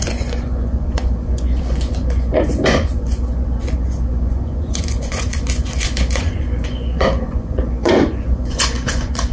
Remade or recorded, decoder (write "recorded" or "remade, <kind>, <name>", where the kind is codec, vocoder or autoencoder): remade, vocoder, Vocos